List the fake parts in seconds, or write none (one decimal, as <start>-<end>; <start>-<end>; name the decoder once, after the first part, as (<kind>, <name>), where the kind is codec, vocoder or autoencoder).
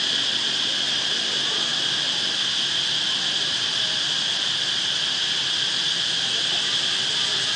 none